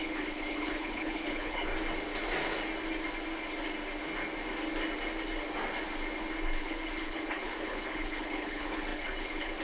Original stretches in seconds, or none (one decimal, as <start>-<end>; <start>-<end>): 1.7-6.6